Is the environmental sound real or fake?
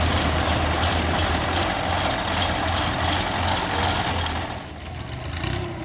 real